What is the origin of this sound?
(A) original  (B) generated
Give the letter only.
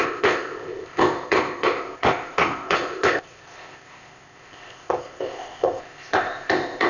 B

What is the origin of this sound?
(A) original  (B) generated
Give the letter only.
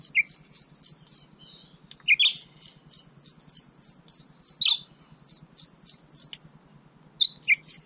A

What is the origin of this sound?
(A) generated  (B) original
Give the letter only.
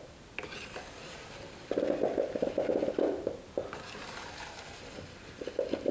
B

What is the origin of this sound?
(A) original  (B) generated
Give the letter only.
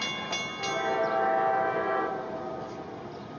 A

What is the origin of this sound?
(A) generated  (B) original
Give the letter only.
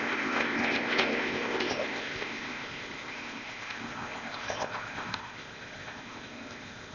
A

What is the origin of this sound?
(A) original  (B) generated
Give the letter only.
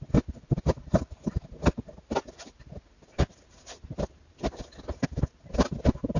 A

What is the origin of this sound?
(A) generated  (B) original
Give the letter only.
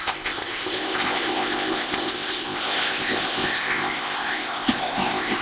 A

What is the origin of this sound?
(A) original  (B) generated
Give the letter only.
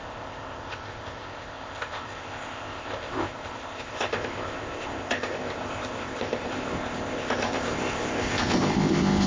B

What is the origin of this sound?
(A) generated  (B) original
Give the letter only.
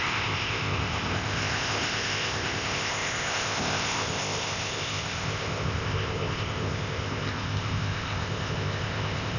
A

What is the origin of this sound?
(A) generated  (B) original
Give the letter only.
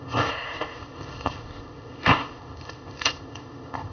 A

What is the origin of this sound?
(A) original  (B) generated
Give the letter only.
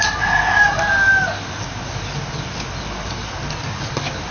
A